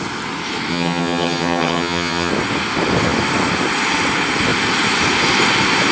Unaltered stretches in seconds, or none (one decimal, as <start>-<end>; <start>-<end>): 0.0-0.7; 2.3-5.9